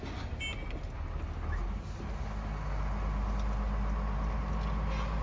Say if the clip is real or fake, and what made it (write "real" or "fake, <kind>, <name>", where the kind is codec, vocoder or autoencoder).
real